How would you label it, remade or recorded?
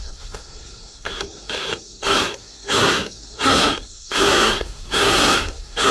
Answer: remade